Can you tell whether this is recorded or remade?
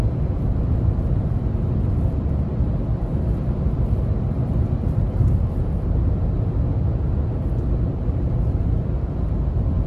remade